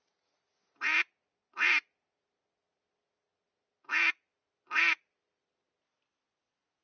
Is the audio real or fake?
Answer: real